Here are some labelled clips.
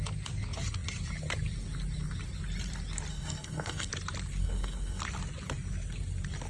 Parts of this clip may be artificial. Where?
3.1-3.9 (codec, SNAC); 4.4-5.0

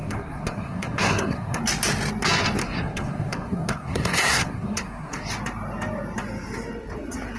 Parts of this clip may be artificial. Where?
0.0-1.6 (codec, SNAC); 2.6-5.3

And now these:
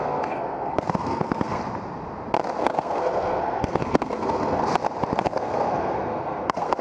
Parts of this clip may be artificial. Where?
0.0-1.6 (codec, SNAC); 2.6-4.6; 5.2-6.8

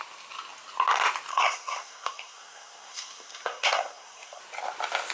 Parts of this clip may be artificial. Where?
1.3-4.4 (codec, SNAC)

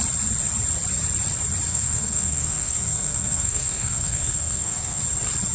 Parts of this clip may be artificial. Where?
1.7-5.0 (codec, SNAC)

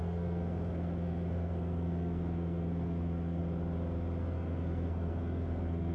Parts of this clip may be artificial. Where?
0.0-3.4 (codec, SNAC); 4.2-5.9

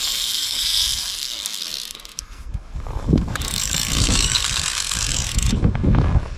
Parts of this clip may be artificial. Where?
0.0-6.4 (codec, SNAC)